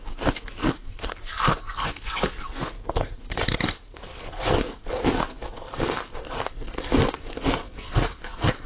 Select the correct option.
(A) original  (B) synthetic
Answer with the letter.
B